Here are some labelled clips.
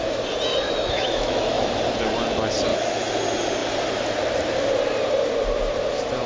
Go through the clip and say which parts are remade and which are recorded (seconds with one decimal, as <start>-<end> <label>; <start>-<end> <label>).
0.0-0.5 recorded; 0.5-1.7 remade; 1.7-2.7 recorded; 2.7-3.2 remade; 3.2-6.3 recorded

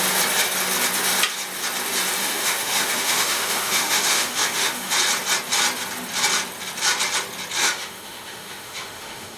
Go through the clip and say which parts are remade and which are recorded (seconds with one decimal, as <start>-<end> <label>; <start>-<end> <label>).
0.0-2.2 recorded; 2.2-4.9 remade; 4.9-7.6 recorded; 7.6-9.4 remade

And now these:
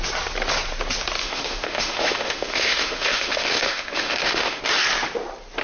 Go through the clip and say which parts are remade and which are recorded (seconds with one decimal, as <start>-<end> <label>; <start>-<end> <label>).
0.0-1.2 recorded; 1.2-4.6 remade; 4.6-5.6 recorded

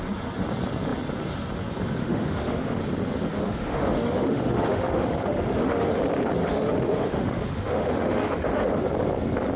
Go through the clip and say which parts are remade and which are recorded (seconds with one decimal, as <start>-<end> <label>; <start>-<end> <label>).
0.0-2.0 recorded; 2.0-2.8 remade; 2.8-3.3 recorded; 3.3-6.0 remade; 6.0-6.4 recorded; 6.4-8.8 remade; 8.8-9.6 recorded

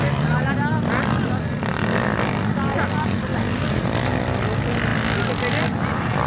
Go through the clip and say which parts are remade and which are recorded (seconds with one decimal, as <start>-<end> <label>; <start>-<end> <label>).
0.0-6.3 recorded